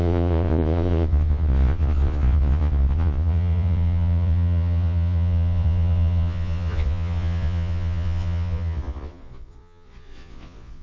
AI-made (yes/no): yes